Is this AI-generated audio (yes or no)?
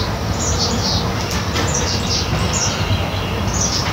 yes